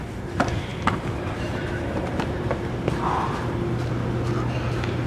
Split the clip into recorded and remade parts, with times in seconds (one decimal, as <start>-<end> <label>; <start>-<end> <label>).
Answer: 0.0-0.7 recorded; 0.7-2.6 remade; 2.6-5.1 recorded